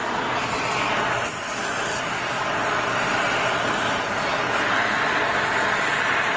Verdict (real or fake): real